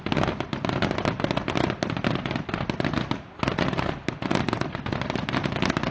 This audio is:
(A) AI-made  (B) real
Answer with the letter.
B